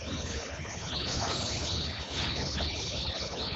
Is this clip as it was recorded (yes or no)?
no